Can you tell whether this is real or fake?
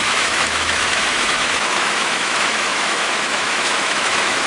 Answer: fake